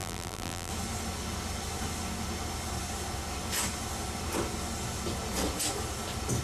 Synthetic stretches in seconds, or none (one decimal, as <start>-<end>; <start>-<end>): 0.0-0.7